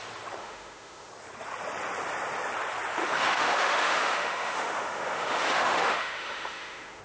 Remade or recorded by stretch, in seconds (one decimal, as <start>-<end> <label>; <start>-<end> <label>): 0.0-0.4 recorded; 0.4-1.1 remade; 1.1-3.0 recorded; 3.0-7.0 remade